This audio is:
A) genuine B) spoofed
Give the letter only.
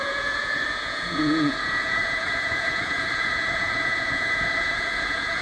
B